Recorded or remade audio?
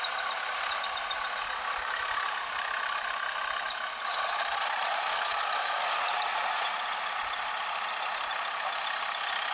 recorded